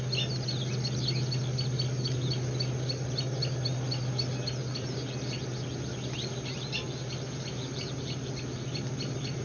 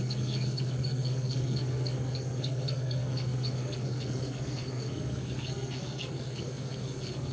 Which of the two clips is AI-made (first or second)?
second